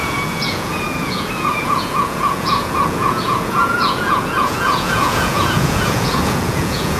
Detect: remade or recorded remade